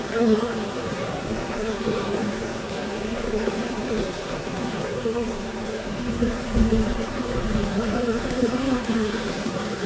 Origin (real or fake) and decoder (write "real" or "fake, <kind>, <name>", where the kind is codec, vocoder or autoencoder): fake, codec, SNAC